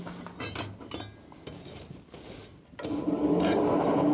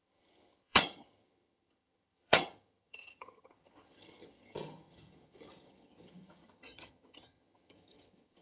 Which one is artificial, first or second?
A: second